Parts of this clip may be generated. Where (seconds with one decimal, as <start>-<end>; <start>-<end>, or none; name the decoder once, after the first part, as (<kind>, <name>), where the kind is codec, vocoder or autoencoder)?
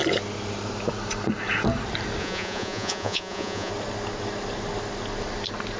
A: 2.2-3.7 (vocoder, Vocos)